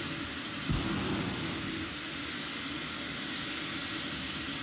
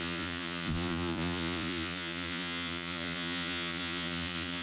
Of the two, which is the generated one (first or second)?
second